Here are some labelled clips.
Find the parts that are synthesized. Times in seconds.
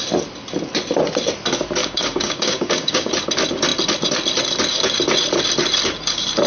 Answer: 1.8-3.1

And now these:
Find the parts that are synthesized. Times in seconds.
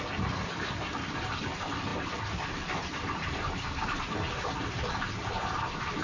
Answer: none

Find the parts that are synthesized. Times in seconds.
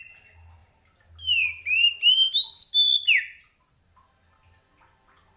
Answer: none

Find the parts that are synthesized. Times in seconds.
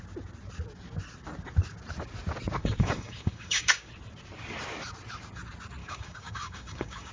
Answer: 2.6-3.9; 5.8-7.1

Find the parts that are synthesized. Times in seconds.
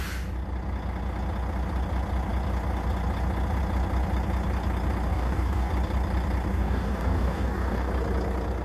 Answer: 5.1-5.7; 6.5-7.9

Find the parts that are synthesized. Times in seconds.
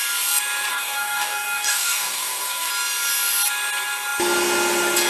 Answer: 0.7-2.7